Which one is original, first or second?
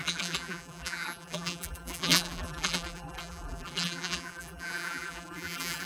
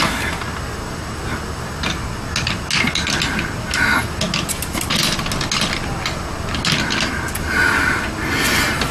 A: second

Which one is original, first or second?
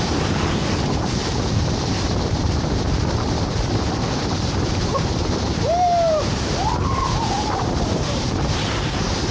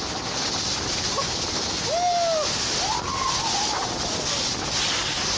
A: second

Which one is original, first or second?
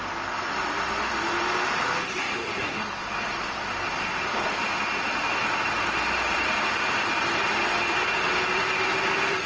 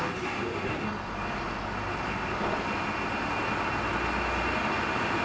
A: second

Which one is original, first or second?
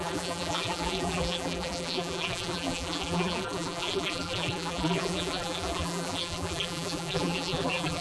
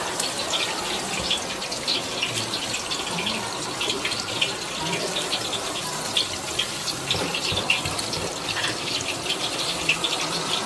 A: second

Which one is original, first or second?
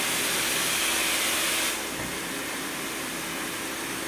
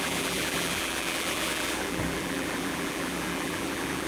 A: first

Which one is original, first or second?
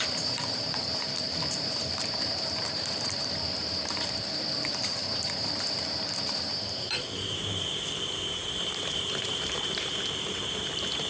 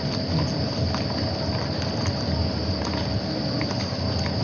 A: second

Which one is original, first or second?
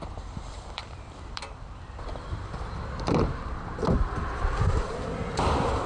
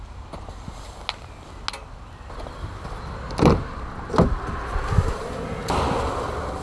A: second